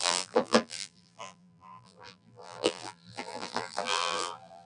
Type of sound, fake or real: fake